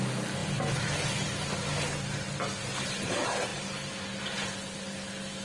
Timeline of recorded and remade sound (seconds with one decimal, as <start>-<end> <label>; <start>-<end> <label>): 0.0-5.4 recorded